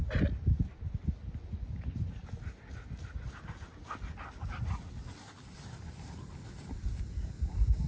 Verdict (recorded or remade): recorded